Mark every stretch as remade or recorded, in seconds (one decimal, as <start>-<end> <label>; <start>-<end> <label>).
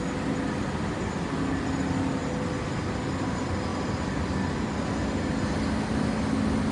0.0-6.7 recorded